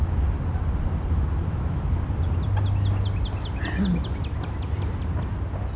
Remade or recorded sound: recorded